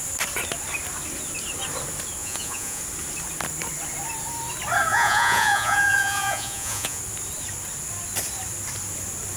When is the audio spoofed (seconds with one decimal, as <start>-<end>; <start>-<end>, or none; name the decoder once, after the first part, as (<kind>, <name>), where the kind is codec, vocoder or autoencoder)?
2.2-2.8 (vocoder, Vocos); 4.9-7.0